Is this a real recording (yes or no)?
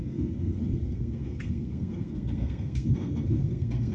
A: no